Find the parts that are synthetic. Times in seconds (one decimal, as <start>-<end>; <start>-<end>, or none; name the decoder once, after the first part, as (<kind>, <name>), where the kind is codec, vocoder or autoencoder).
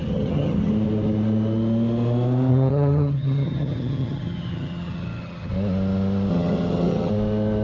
0.0-0.7 (vocoder, HiFi-GAN); 2.5-5.5; 6.3-7.1